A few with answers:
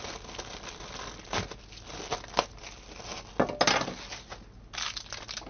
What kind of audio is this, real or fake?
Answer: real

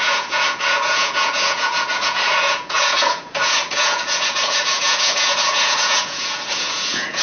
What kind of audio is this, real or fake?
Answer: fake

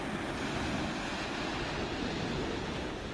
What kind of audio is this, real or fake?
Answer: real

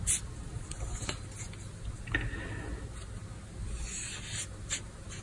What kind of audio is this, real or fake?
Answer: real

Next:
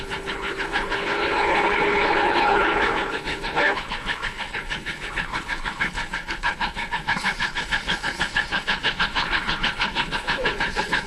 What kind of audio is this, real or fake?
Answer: fake